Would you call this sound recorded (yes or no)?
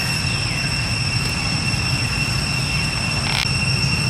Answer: yes